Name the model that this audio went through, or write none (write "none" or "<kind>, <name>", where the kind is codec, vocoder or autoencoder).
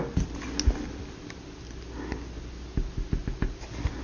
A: none